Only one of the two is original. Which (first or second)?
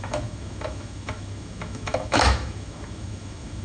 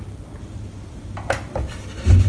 second